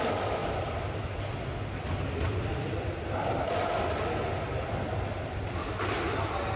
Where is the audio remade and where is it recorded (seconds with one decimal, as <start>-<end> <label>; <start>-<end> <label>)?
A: 0.0-6.6 recorded